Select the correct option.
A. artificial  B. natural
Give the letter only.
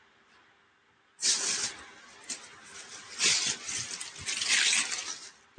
A